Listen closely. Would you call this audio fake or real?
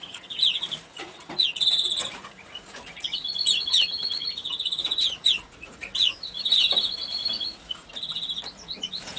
fake